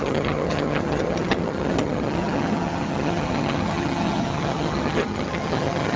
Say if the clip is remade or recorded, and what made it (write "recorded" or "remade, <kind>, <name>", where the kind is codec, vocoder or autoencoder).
remade, vocoder, HiFi-GAN